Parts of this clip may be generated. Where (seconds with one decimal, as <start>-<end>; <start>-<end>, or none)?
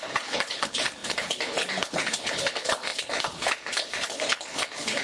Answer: 0.0-5.0